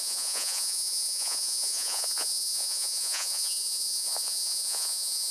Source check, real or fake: fake